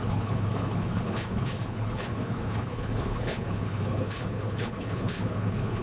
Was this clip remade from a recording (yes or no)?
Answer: yes